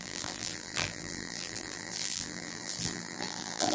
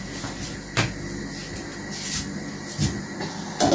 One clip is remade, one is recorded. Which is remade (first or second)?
first